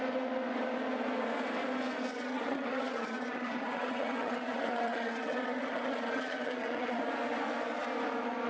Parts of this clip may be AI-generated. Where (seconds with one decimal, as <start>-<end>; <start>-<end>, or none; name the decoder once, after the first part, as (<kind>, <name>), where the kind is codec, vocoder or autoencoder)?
2.1-7.0 (vocoder, HiFi-GAN)